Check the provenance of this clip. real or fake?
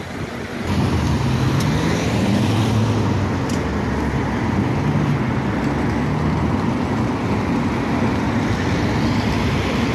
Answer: real